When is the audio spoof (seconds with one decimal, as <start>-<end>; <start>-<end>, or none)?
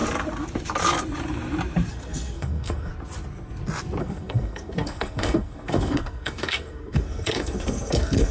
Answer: 1.9-2.9; 4.0-8.3